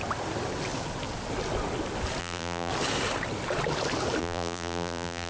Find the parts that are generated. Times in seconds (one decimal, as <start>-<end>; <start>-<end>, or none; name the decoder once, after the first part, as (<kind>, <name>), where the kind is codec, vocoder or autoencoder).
2.2-2.7 (vocoder, BigVGAN v2); 4.2-5.3